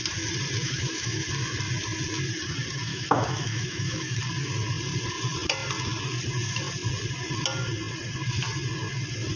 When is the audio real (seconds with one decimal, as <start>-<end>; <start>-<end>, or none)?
0.0-0.6; 1.3-2.9; 4.2-9.4